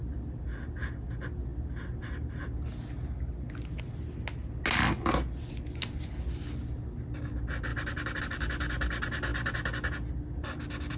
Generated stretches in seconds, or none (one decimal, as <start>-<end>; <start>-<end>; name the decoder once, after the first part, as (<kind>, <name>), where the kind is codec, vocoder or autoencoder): none